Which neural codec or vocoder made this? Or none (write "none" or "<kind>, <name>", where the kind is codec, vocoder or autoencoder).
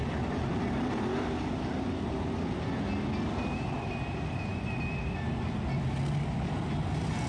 none